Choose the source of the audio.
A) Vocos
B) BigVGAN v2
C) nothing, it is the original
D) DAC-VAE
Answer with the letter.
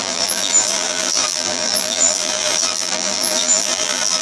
B